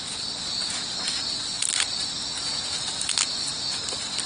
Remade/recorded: recorded